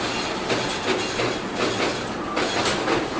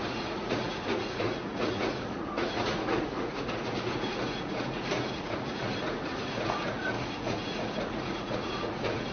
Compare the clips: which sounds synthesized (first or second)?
second